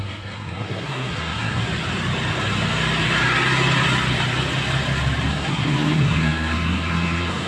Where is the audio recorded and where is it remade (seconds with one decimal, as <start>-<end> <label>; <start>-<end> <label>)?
0.0-1.6 remade; 1.6-5.3 recorded; 5.3-7.5 remade